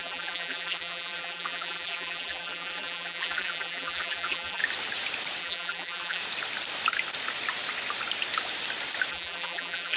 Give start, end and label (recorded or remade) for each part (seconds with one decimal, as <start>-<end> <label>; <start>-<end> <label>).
0.0-4.6 remade; 4.6-5.4 recorded; 5.4-6.2 remade; 6.2-9.1 recorded; 9.1-10.0 remade